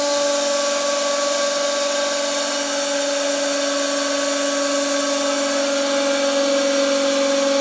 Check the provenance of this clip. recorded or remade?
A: recorded